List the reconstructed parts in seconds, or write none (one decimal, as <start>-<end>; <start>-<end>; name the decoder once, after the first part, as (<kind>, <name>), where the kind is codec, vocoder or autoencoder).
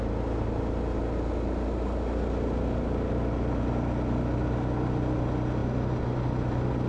none